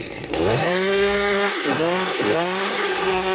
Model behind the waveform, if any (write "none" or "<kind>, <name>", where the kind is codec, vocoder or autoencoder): codec, SNAC